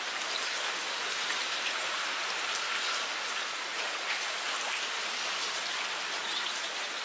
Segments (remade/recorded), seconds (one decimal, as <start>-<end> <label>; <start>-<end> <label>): 0.0-3.7 recorded; 3.7-4.4 remade; 4.4-6.2 recorded; 6.2-7.0 remade